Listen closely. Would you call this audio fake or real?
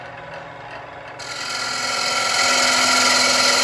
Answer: real